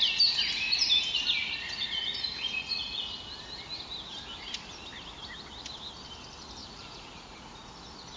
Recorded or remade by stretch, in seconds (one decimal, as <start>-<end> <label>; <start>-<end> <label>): 0.0-1.4 recorded; 1.4-3.0 remade; 3.0-6.6 recorded; 6.6-7.7 remade; 7.7-8.2 recorded